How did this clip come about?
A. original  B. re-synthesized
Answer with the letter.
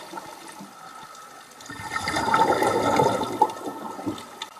A